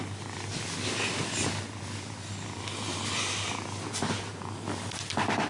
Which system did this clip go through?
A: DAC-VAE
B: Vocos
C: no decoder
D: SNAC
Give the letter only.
C